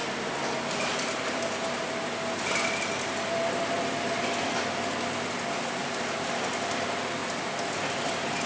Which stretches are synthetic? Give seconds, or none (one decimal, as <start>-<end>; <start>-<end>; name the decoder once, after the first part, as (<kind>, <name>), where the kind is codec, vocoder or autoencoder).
none